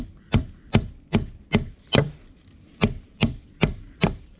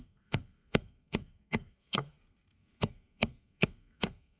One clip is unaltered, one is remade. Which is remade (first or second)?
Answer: second